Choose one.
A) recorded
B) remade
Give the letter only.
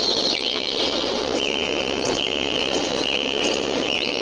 B